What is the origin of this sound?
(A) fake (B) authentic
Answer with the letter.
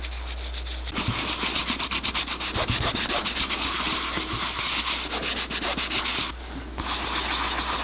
B